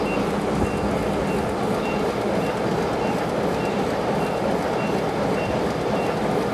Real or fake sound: real